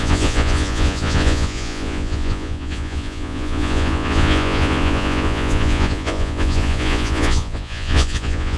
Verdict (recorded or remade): remade